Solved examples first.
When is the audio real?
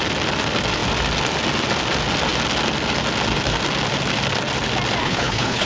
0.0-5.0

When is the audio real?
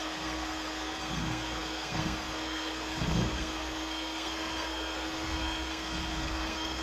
none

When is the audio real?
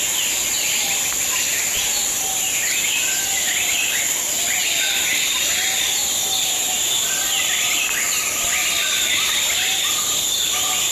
0.0-10.9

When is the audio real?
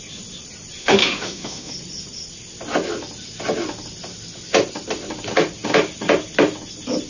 0.0-0.8; 1.7-7.1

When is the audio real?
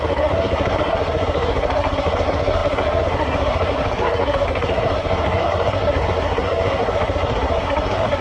none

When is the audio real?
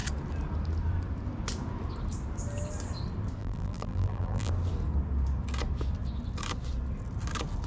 0.0-3.4; 4.5-7.7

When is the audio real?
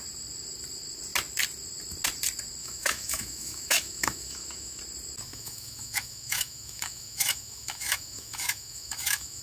0.0-2.6; 4.8-5.3